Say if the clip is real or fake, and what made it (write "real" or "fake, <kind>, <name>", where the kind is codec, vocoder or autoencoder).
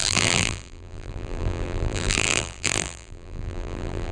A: fake, vocoder, BigVGAN v2